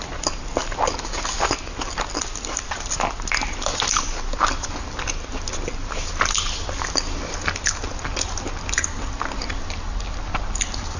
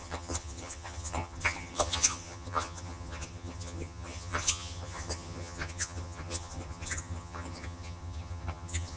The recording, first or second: first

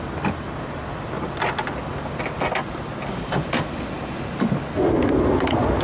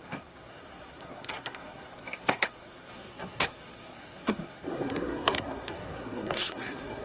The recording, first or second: first